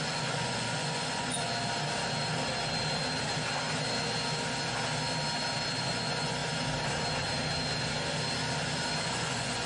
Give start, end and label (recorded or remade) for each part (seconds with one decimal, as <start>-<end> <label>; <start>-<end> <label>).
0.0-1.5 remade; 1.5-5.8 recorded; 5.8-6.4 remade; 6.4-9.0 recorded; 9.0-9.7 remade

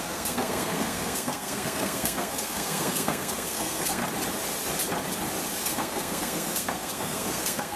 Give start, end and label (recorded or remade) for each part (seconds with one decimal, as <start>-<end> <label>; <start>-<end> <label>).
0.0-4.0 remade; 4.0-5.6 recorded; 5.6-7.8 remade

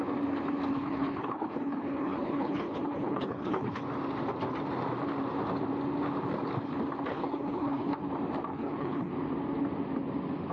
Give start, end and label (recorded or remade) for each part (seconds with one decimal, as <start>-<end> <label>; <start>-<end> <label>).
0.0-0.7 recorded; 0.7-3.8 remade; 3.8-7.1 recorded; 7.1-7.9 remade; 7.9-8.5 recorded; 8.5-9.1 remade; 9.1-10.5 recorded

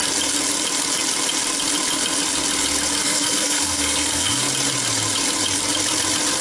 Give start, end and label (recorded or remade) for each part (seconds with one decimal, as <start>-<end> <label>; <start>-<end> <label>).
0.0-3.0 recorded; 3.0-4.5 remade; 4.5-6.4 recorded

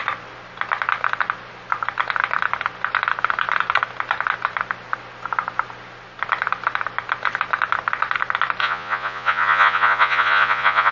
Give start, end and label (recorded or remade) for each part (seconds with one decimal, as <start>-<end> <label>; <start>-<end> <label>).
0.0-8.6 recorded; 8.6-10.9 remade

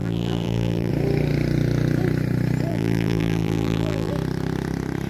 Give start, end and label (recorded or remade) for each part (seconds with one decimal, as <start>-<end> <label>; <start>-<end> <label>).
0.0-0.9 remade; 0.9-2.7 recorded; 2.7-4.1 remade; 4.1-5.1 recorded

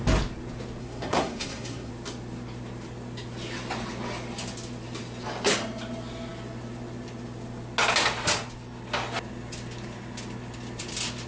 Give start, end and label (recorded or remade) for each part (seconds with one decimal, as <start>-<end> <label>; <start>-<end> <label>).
0.0-0.8 recorded; 0.8-1.9 remade; 1.9-11.3 recorded